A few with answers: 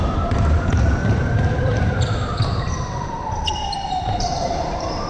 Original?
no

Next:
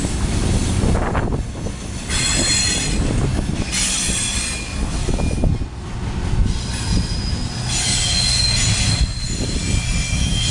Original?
yes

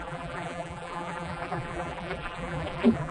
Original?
no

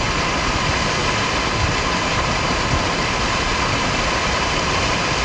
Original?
yes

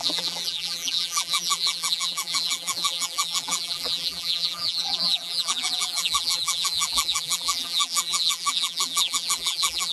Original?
no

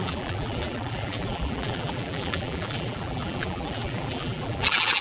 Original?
no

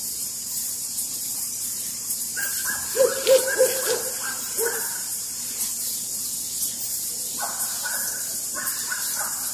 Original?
no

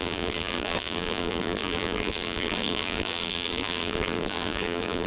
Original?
no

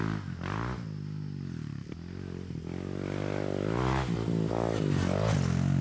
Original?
yes